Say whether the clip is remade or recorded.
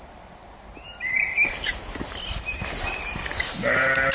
recorded